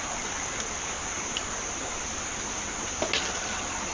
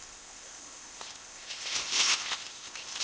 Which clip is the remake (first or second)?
second